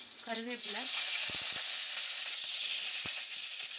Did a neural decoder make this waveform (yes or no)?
yes